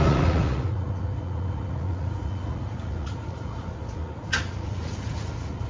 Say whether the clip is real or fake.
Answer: fake